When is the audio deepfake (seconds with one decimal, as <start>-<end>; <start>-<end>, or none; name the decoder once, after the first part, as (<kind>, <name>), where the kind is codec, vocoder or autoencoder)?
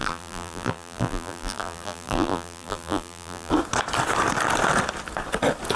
0.0-3.5 (vocoder, BigVGAN v2)